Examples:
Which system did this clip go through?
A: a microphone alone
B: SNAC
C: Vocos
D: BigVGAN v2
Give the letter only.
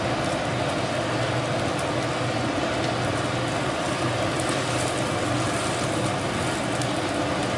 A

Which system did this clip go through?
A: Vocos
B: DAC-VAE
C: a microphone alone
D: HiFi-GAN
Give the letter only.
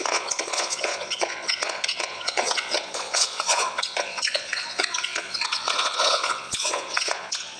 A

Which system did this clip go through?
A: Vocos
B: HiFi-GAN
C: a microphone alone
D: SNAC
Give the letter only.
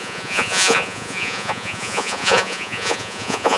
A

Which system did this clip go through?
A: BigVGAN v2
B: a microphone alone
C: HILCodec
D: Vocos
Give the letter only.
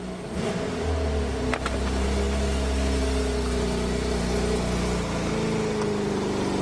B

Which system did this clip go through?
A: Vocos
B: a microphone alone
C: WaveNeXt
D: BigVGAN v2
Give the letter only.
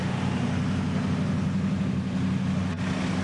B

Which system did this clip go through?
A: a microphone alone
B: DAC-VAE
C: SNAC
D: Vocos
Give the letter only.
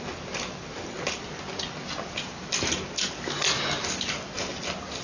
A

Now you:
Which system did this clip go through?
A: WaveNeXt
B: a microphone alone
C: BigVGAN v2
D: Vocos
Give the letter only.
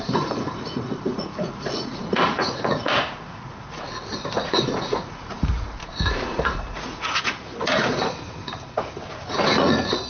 D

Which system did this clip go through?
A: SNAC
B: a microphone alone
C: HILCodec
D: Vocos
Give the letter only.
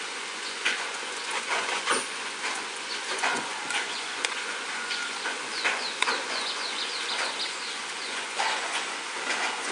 D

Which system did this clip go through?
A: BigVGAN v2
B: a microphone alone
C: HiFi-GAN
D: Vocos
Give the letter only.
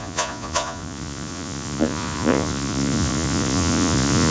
D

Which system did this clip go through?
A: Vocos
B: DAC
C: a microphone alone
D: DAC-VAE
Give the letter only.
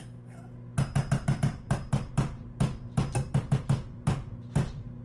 C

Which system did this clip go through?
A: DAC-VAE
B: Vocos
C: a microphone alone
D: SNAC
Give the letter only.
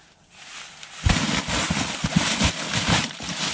C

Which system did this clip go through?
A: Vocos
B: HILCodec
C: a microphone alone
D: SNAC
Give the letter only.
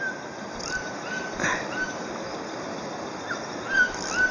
C